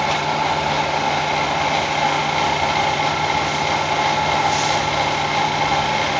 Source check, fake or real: real